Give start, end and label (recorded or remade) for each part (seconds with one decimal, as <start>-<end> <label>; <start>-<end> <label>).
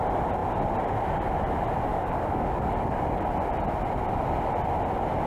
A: 0.0-1.9 recorded; 1.9-3.3 remade; 3.3-5.3 recorded